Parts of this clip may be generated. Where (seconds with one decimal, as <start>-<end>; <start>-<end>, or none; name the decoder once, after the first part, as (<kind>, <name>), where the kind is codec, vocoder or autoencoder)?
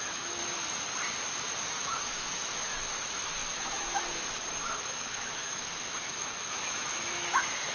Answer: 0.0-0.4 (autoencoder, DAC-VAE); 1.6-7.7